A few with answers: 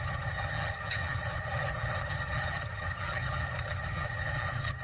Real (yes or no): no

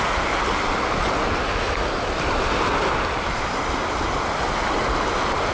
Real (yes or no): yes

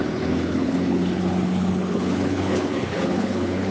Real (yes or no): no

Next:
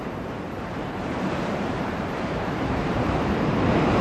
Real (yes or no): no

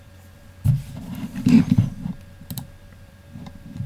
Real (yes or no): no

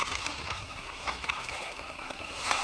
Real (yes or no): no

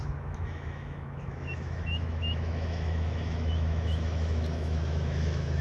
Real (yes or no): no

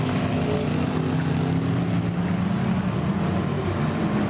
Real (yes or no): yes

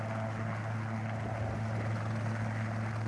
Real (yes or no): yes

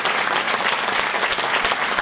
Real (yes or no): yes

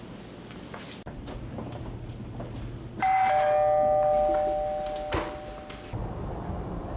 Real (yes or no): yes